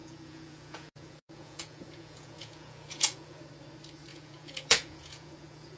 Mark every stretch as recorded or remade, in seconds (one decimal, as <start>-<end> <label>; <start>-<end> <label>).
0.0-3.4 remade; 3.4-4.1 recorded; 4.1-5.8 remade